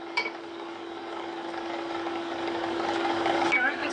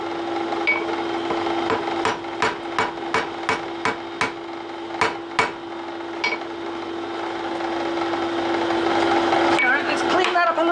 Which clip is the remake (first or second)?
first